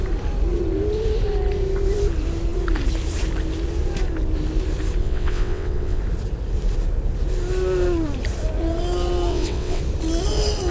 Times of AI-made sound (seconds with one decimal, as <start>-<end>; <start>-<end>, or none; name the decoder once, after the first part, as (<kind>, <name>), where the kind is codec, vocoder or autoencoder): 5.0-6.0 (vocoder, WaveNeXt); 9.3-9.8

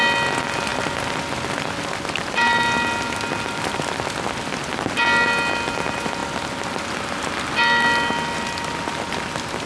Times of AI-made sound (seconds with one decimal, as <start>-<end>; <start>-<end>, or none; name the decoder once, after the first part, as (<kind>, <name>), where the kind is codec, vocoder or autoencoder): none